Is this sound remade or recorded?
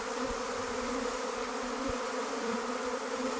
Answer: remade